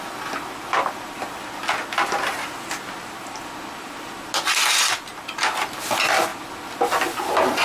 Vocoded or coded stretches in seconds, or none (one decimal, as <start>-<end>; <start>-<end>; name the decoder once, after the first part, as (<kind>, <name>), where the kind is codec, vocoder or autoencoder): none